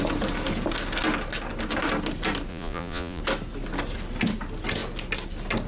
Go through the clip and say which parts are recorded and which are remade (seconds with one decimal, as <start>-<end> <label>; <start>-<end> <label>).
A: 0.0-2.5 recorded; 2.5-3.2 remade; 3.2-5.7 recorded